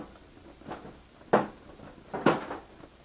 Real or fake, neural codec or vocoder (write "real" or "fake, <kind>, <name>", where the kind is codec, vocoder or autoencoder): real